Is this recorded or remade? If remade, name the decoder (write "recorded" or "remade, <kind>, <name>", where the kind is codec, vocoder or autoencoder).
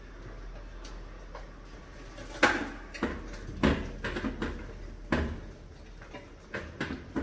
recorded